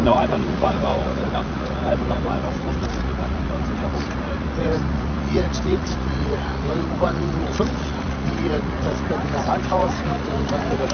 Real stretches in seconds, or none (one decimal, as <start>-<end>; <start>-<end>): none